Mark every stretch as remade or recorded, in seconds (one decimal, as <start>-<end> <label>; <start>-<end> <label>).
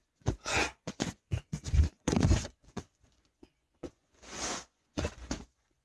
0.0-5.8 remade